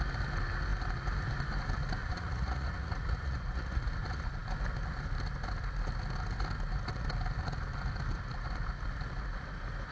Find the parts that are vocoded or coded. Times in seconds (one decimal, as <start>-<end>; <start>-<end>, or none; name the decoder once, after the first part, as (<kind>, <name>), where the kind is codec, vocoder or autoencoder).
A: 2.0-3.8 (vocoder, Vocos)